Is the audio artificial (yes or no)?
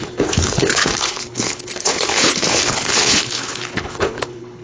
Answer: yes